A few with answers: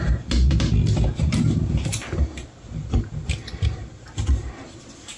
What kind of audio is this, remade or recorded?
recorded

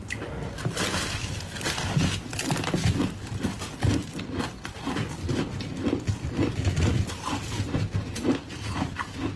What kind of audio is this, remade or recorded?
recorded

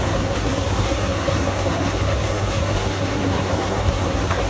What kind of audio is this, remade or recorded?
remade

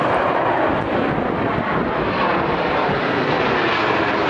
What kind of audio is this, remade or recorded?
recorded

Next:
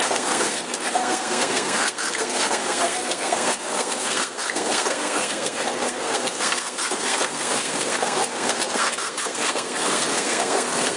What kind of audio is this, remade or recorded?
remade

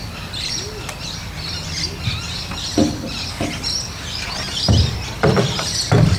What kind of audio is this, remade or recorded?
recorded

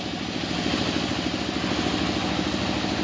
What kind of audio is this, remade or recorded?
recorded